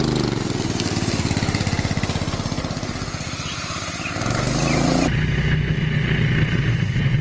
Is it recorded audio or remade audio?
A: recorded